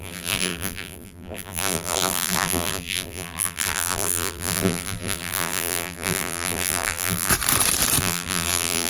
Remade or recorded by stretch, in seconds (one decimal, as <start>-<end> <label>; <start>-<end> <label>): 0.0-7.3 remade; 7.3-8.0 recorded; 8.0-8.9 remade